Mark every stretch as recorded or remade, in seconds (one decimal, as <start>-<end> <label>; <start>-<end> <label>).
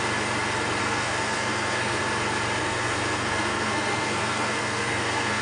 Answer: 0.0-0.8 recorded; 0.8-2.0 remade; 2.0-2.6 recorded; 2.6-5.4 remade